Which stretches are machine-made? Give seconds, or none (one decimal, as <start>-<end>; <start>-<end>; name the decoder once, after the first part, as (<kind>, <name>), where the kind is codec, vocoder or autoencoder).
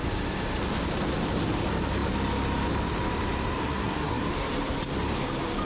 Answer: 3.6-4.2 (codec, SNAC)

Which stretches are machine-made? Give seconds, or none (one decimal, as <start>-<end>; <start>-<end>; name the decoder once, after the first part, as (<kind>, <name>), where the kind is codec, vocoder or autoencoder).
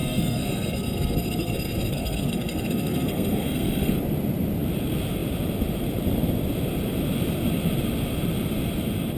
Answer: 0.0-3.9 (codec, SNAC)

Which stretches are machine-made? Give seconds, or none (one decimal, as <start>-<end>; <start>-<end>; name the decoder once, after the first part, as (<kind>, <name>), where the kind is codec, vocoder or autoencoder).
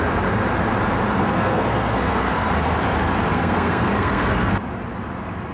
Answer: 1.2-2.5 (codec, SNAC); 3.3-4.5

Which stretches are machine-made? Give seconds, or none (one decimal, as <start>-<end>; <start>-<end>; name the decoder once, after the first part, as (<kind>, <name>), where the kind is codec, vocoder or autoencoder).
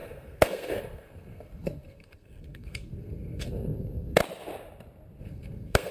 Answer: 0.0-4.2 (codec, SNAC); 5.2-5.9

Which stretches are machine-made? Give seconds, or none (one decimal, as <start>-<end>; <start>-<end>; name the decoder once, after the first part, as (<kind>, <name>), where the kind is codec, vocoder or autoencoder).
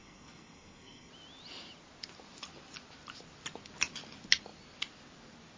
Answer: 0.0-1.1 (codec, SNAC)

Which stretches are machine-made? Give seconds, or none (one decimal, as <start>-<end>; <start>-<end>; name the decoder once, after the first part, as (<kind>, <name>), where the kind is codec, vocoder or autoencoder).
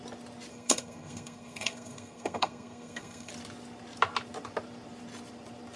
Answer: 0.5-3.3 (codec, SNAC)